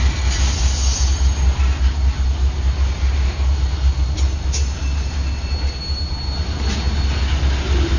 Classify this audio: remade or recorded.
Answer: recorded